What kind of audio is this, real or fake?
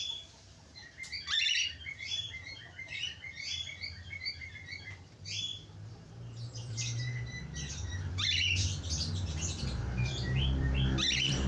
fake